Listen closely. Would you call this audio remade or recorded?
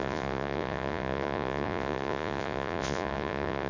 remade